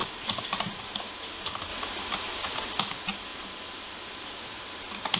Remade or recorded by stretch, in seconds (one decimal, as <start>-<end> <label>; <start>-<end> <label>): 0.0-0.8 remade; 0.8-3.3 recorded; 3.3-4.4 remade; 4.4-5.2 recorded